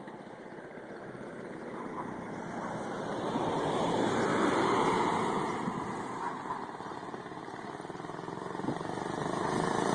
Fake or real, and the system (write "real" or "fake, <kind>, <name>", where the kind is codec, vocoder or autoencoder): fake, vocoder, BigVGAN v2